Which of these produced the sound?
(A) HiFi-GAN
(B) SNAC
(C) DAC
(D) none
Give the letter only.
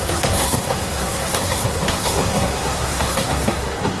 B